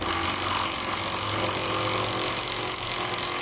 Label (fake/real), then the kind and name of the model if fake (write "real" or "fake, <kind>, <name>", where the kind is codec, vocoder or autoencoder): real